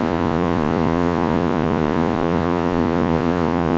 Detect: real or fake fake